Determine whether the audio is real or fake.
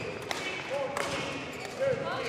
real